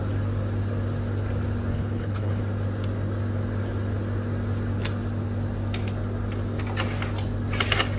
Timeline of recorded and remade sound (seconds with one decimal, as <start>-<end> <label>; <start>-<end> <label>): 0.0-1.7 recorded; 1.7-2.4 remade; 2.4-8.0 recorded